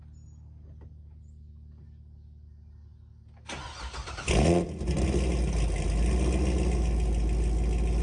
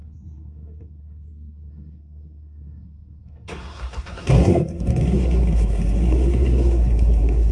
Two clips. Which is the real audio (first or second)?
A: first